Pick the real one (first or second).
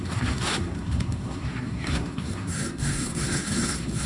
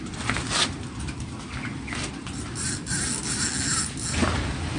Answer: second